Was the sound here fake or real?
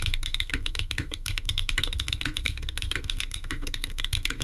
fake